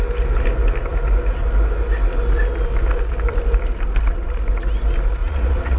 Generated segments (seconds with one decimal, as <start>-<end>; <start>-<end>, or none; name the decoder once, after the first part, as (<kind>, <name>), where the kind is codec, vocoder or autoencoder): 5.2-5.8 (vocoder, Vocos)